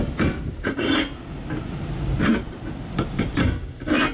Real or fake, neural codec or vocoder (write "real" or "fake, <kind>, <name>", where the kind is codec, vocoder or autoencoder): real